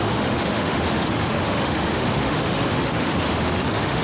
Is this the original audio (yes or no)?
no